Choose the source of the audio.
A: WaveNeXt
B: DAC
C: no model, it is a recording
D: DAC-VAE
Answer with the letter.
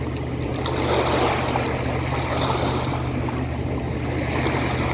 C